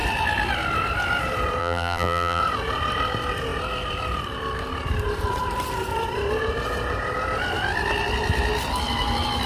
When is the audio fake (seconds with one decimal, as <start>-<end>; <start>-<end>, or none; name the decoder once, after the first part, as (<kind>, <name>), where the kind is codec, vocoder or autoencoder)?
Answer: 1.6-2.4 (vocoder, BigVGAN v2)